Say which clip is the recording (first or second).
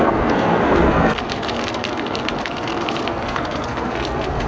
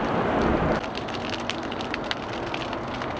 second